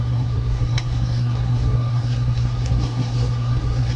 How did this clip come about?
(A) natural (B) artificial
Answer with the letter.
B